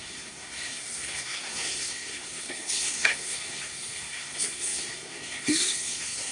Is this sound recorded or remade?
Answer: remade